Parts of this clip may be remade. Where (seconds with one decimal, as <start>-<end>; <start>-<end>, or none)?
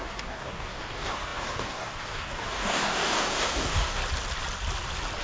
0.0-4.0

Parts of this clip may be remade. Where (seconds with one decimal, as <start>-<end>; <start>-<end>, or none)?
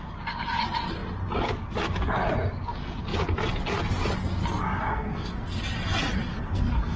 4.9-5.6; 6.3-7.0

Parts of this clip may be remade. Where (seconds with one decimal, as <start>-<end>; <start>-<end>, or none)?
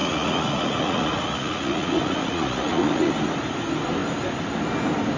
0.0-3.1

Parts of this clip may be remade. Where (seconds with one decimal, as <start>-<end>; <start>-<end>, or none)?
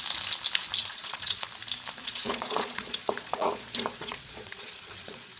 0.8-1.4; 2.0-5.4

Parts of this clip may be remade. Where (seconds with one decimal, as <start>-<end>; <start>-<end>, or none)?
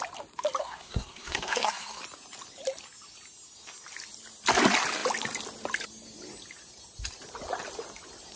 0.6-2.0